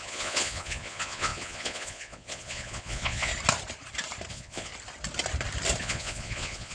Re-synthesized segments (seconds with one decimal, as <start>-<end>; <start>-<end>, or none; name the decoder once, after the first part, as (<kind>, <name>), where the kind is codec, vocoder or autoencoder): 0.0-3.3 (vocoder, Vocos); 4.3-4.7; 5.8-6.7